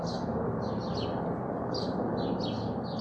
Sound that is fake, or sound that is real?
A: real